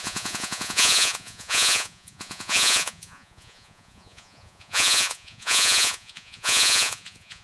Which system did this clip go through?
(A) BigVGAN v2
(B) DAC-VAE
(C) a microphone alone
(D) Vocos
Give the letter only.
D